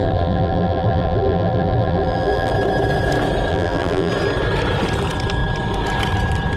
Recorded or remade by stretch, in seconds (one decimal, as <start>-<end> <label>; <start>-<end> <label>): 0.0-2.5 remade; 2.5-3.5 recorded; 3.5-4.1 remade; 4.1-6.6 recorded

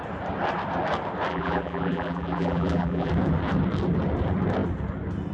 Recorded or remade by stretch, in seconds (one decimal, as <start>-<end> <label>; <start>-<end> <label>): 0.0-1.3 recorded; 1.3-3.1 remade; 3.1-5.3 recorded

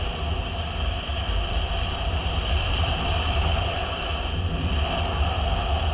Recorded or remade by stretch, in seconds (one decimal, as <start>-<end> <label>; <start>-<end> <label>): 0.0-1.1 recorded; 1.1-3.8 remade; 3.8-5.9 recorded

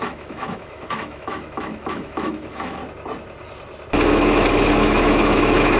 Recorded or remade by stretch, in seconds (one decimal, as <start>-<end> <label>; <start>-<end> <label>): 0.0-2.8 remade; 2.8-4.7 recorded; 4.7-5.8 remade

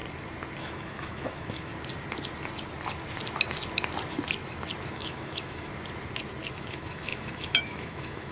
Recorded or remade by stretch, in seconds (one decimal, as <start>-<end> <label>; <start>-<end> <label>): 0.0-0.6 recorded; 0.6-1.7 remade; 1.7-4.9 recorded; 4.9-5.7 remade; 5.7-6.5 recorded; 6.5-8.3 remade

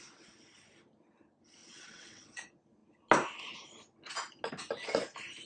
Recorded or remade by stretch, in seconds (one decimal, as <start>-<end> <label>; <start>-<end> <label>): 0.0-1.6 recorded; 1.6-2.3 remade; 2.3-5.5 recorded